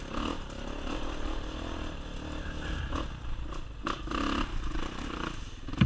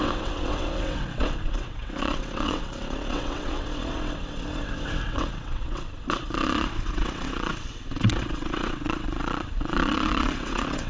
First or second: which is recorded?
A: first